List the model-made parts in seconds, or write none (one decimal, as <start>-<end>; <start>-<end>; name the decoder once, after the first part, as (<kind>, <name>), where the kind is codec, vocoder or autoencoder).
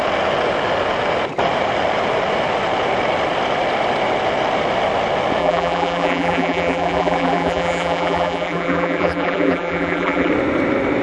5.4-10.3 (vocoder, BigVGAN v2)